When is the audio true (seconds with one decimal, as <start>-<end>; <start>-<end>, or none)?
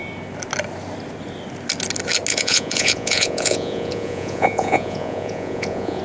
0.0-2.3